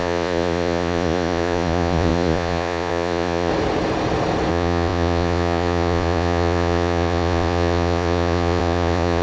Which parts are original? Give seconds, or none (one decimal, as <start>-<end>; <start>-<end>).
3.5-4.5